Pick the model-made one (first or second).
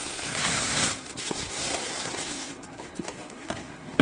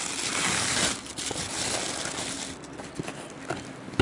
first